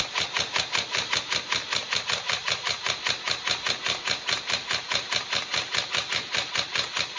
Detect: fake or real real